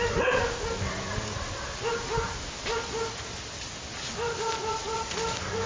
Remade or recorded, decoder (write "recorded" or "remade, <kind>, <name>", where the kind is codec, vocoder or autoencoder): recorded